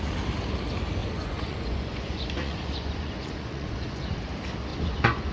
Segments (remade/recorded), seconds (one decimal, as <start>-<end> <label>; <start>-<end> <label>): 0.0-1.0 recorded; 1.0-4.2 remade; 4.2-4.7 recorded; 4.7-5.3 remade